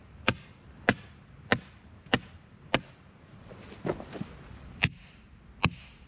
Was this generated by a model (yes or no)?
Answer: no